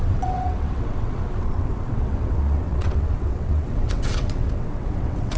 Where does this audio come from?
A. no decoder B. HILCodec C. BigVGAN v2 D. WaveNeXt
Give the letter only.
D